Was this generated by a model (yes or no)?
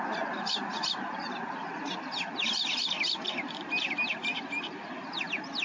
no